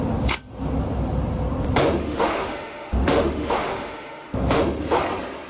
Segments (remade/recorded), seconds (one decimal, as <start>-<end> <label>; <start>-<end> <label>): 0.0-2.0 recorded; 2.0-4.6 remade; 4.6-5.5 recorded